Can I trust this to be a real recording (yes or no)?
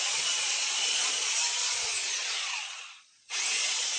no